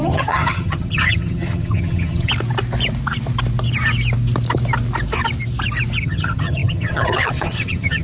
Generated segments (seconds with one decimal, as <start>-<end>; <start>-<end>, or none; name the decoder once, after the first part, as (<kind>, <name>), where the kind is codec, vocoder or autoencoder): 0.0-2.3 (vocoder, HiFi-GAN); 6.0-8.0